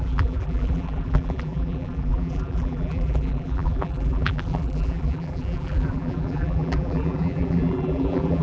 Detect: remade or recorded remade